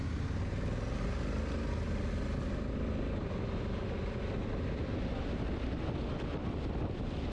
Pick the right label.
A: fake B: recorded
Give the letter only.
B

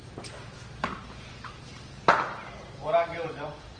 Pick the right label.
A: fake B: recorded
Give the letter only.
A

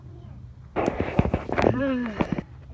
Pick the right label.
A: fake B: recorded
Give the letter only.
A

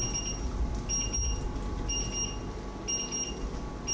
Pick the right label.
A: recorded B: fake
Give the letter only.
A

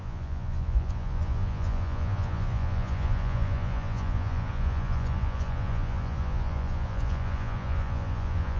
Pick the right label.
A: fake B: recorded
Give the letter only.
A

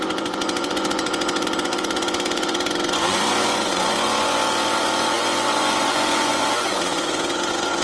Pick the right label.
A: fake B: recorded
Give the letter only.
A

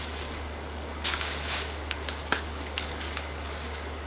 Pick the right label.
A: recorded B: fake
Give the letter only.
B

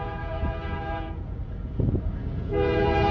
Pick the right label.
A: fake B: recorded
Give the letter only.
A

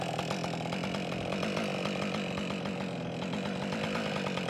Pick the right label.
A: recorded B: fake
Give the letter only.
A